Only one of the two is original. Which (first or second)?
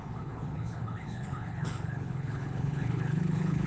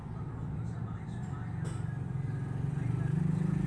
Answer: second